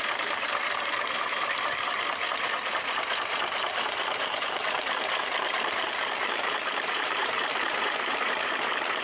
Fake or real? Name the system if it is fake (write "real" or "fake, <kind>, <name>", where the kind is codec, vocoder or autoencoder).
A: fake, vocoder, BigVGAN v2